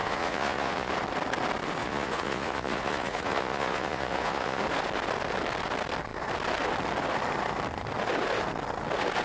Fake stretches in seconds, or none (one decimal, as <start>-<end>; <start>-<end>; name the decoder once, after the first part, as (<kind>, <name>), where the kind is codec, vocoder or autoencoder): 0.0-0.9 (vocoder, Vocos); 1.8-4.6